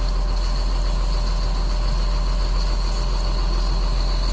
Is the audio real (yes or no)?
yes